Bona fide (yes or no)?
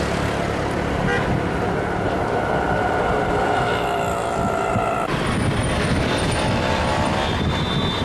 yes